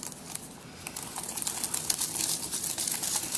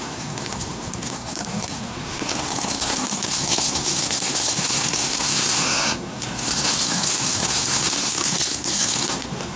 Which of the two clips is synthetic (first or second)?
second